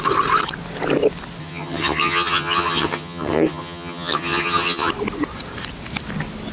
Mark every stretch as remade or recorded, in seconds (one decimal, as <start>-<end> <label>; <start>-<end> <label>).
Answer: 0.0-1.4 recorded; 1.4-4.9 remade; 4.9-6.5 recorded